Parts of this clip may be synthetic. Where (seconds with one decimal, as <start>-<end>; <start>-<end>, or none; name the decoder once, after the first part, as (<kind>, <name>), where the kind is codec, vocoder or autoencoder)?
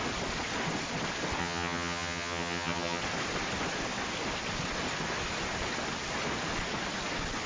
1.4-3.0 (vocoder, HiFi-GAN)